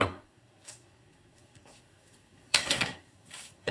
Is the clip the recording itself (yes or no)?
no